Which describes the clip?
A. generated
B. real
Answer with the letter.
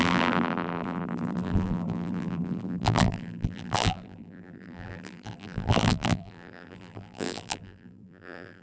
A